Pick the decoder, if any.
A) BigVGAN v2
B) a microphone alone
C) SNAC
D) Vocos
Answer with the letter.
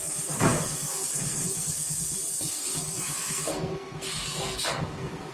C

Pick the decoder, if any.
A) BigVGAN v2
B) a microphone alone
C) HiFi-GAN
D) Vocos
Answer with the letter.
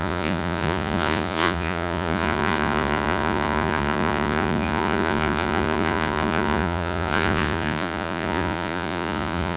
D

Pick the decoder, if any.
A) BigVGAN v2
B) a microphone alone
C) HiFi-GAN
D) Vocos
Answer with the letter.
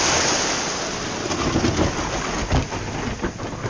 B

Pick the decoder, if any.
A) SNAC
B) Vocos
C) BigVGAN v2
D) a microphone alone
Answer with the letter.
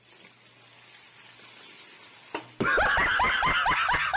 D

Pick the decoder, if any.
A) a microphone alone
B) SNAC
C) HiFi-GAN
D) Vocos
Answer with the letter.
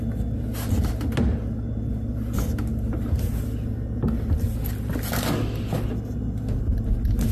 A